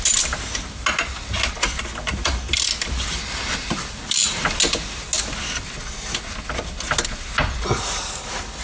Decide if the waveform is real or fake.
real